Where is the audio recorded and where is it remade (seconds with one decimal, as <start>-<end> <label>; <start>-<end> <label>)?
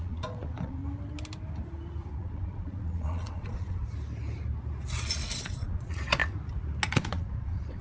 0.0-0.8 remade; 0.8-2.2 recorded; 2.2-3.8 remade; 3.8-5.4 recorded; 5.4-6.2 remade; 6.2-6.9 recorded; 6.9-7.8 remade